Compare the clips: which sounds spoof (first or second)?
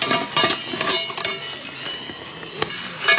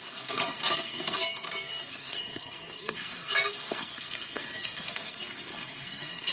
second